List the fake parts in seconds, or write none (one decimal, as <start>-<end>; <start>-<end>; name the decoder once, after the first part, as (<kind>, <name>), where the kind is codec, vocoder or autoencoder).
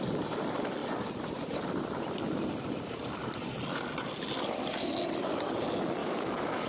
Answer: 6.0-6.7 (autoencoder, DAC-VAE)